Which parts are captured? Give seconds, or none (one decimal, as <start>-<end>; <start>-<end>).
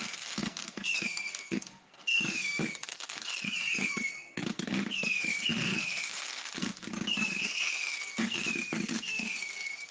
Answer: none